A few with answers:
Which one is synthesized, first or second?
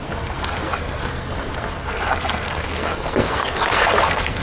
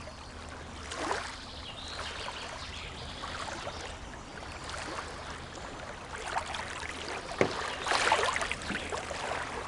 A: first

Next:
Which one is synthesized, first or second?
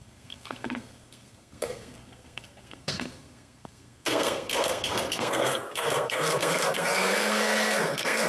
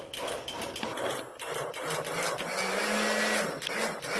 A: first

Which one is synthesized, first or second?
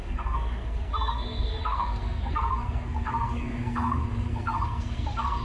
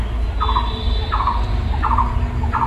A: first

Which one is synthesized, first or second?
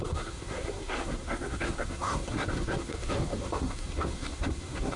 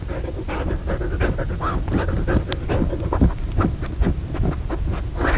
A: first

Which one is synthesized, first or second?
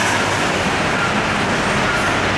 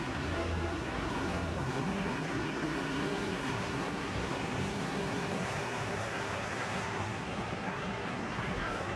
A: second